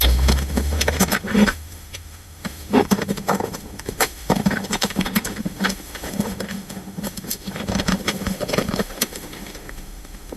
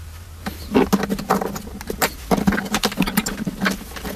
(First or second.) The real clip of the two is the second